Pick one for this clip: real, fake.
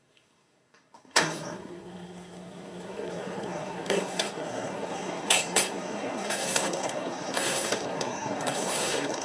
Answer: fake